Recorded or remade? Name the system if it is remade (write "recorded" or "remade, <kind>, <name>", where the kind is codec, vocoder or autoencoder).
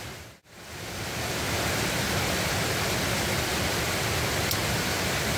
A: recorded